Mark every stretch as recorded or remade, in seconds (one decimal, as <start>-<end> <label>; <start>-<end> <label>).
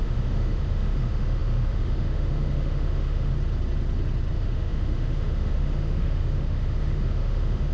0.0-3.3 remade; 3.3-4.3 recorded; 4.3-7.7 remade